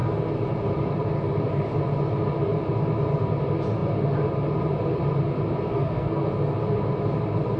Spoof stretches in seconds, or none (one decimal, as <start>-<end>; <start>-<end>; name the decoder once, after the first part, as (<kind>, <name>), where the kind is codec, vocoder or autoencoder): 5.7-6.3 (codec, SNAC)